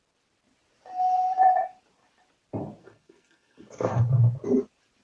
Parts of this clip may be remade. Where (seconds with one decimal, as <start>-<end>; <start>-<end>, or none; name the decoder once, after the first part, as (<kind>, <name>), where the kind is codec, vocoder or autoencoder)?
2.8-4.0 (codec, SNAC)